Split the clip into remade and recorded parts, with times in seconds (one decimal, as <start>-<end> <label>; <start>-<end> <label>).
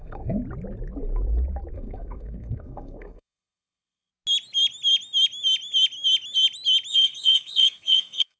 0.0-0.4 remade; 0.4-1.7 recorded; 1.7-4.1 remade; 4.1-6.9 recorded; 6.9-8.4 remade